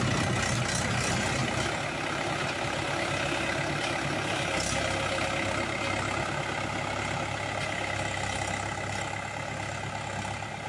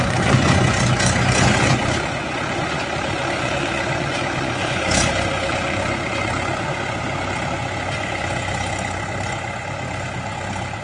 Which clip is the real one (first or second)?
first